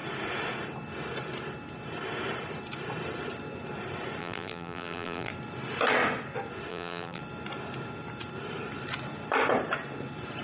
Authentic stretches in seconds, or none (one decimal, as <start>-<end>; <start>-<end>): 0.0-4.2; 5.3-6.7; 7.2-10.4